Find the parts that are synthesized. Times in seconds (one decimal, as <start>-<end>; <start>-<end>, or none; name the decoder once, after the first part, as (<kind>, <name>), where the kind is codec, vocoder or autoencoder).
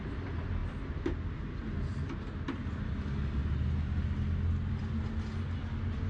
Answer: none